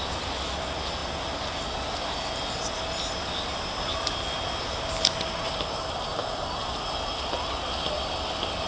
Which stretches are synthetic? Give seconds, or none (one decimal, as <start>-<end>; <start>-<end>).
none